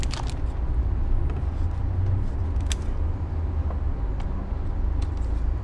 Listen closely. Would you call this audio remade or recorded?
recorded